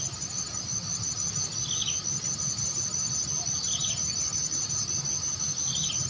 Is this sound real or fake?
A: real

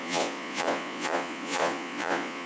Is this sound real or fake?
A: fake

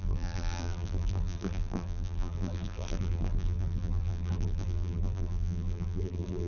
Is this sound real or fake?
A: fake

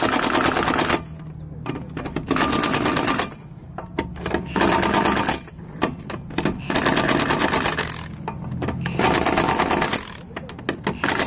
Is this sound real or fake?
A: real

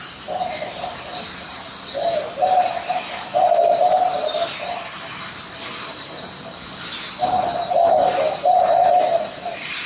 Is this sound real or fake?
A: real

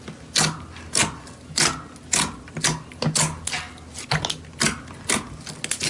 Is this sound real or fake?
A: real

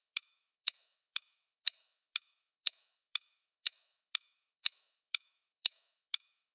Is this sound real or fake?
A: fake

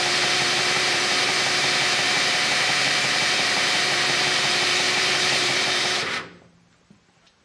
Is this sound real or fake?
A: fake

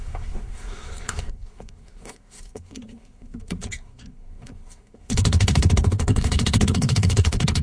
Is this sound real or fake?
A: fake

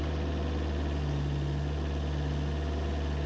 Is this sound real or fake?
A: real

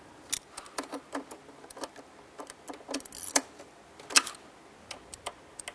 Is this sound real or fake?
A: real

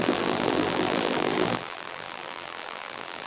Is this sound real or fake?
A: fake